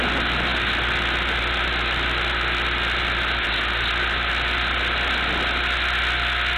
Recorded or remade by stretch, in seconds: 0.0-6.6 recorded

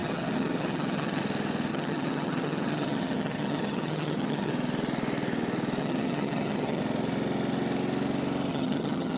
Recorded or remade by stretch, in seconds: 0.0-1.2 remade; 1.2-1.7 recorded; 1.7-4.5 remade; 4.5-5.8 recorded; 5.8-6.8 remade; 6.8-8.5 recorded; 8.5-9.2 remade

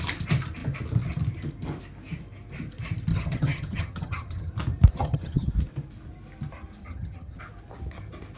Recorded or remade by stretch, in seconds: 0.0-3.1 recorded; 3.1-4.5 remade; 4.5-4.9 recorded; 4.9-5.5 remade; 5.5-6.8 recorded; 6.8-7.4 remade; 7.4-8.4 recorded

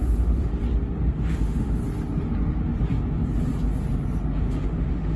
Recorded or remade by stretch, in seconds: 0.0-0.5 remade; 0.5-1.1 recorded; 1.1-1.8 remade; 1.8-4.4 recorded; 4.4-5.2 remade